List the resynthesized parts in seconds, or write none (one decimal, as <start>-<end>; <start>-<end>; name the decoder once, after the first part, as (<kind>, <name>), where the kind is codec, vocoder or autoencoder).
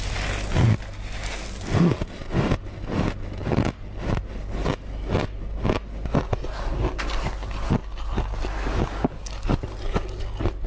none